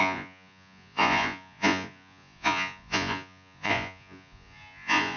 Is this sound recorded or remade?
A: remade